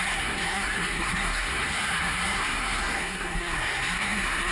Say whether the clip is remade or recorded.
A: remade